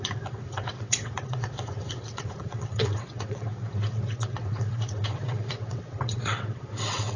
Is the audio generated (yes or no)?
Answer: yes